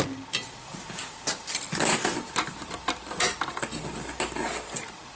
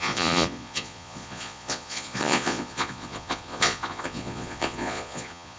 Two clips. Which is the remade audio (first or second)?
second